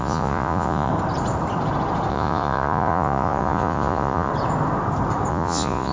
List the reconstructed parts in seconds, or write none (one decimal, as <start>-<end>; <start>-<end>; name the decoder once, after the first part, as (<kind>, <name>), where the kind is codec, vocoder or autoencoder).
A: 0.0-0.9 (vocoder, Vocos); 2.1-4.3; 5.3-5.9